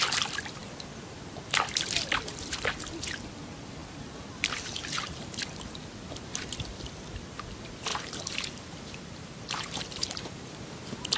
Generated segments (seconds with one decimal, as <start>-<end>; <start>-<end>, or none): 3.8-5.4; 7.9-10.2